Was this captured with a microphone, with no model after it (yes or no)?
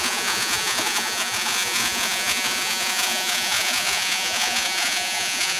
no